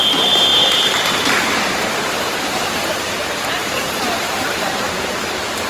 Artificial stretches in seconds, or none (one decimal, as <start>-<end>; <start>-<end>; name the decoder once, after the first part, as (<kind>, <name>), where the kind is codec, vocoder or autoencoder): 0.0-5.7 (vocoder, BigVGAN v2)

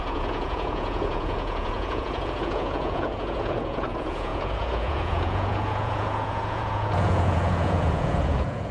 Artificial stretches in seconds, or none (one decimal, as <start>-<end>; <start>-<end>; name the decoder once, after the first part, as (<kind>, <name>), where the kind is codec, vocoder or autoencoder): 0.0-8.7 (vocoder, Vocos)